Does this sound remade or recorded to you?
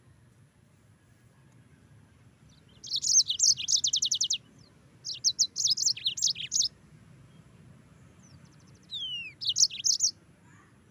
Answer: recorded